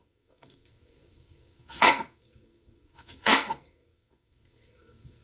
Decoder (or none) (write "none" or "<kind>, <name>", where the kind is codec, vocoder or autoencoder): codec, SNAC